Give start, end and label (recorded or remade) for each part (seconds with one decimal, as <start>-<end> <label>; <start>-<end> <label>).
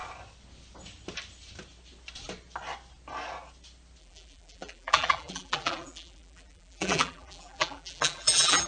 0.0-4.0 recorded; 4.0-8.7 remade